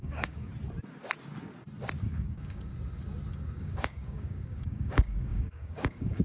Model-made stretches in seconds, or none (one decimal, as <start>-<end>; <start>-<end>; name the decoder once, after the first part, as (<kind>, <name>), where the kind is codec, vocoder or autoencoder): 0.0-0.5 (codec, DAC); 2.0-2.7; 3.3-6.2